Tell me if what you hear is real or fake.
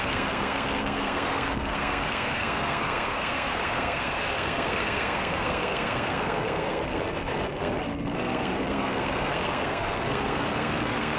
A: fake